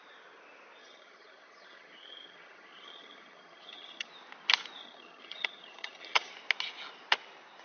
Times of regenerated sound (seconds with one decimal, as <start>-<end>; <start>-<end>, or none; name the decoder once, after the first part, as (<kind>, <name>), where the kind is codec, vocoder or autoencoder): 0.8-4.1 (vocoder, HiFi-GAN); 4.8-6.3